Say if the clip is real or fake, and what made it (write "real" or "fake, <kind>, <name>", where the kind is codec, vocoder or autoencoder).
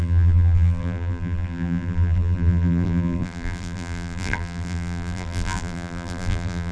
fake, vocoder, BigVGAN v2